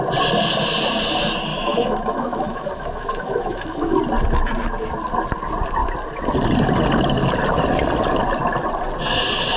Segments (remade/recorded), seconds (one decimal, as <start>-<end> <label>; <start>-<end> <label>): 0.0-1.5 recorded; 1.5-4.0 remade; 4.0-9.6 recorded